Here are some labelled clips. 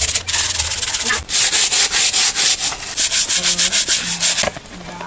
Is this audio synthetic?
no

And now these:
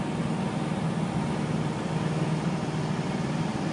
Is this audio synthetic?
no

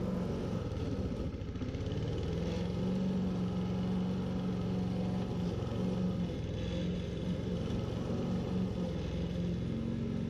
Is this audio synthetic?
no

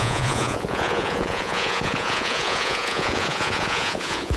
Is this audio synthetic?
yes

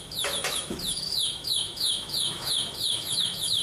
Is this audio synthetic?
yes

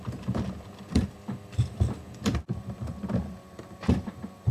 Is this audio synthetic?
yes